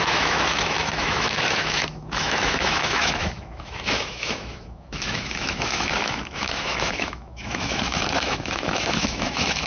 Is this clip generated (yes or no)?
yes